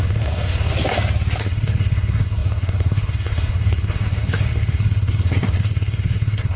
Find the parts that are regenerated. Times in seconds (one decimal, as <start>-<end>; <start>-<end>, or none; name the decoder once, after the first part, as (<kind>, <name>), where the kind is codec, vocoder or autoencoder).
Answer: 0.0-0.7 (codec, SNAC); 1.4-6.6